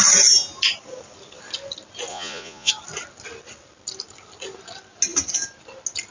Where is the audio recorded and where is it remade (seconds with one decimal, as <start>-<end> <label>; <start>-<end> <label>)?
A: 0.0-2.1 recorded; 2.1-2.7 remade; 2.7-6.1 recorded